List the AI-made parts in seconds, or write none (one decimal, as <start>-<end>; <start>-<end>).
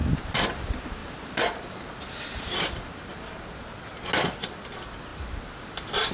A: none